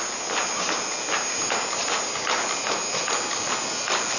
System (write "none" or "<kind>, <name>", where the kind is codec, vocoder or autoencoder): none